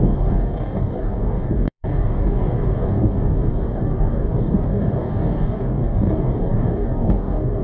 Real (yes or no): no